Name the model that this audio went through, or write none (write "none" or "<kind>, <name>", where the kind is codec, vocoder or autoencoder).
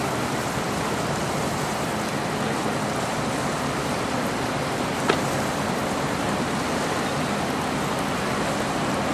none